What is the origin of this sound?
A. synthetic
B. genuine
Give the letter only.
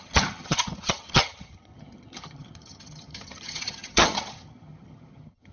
A